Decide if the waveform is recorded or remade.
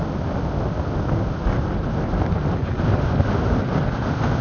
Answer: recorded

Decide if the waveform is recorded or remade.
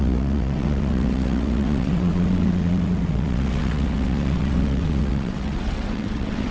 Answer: remade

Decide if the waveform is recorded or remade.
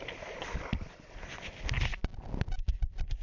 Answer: recorded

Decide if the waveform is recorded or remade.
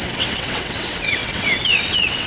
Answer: remade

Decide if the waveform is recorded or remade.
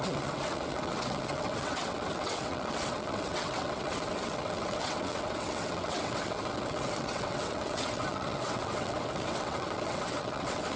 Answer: remade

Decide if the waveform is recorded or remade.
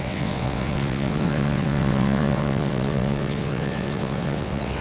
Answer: remade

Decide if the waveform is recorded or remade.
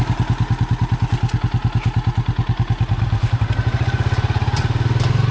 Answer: recorded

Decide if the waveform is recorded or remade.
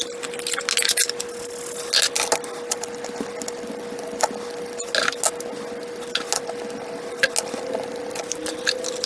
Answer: recorded